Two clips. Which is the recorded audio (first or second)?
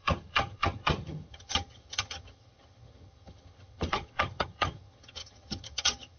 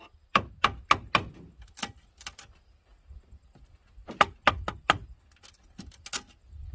second